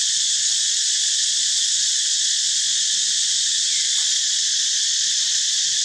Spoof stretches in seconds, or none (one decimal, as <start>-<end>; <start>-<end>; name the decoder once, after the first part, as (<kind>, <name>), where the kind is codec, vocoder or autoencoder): 0.0-2.8 (vocoder, Vocos); 3.8-5.8